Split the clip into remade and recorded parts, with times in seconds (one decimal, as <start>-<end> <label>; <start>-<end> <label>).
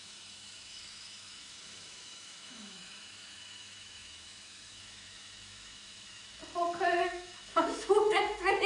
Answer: 0.0-6.4 remade; 6.4-6.9 recorded; 6.9-8.7 remade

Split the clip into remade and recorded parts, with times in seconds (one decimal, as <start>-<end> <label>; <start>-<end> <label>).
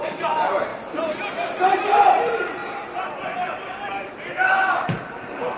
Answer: 0.0-0.7 remade; 0.7-1.3 recorded; 1.3-2.6 remade; 2.6-4.1 recorded; 4.1-5.6 remade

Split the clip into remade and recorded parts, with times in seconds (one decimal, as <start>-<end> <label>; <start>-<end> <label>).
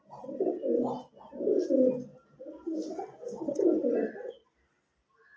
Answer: 0.0-5.4 recorded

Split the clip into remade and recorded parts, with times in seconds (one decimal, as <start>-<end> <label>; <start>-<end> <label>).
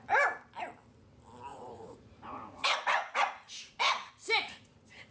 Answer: 0.0-1.5 recorded; 1.5-4.1 remade; 4.1-5.1 recorded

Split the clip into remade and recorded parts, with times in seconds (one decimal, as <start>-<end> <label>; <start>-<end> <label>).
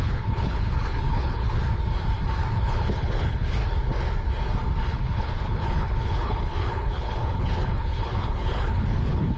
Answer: 0.0-1.6 remade; 1.6-2.5 recorded; 2.5-3.6 remade; 3.6-4.9 recorded; 4.9-9.4 remade